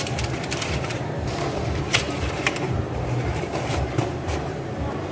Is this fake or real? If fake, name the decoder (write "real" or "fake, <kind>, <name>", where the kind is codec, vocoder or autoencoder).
fake, vocoder, BigVGAN v2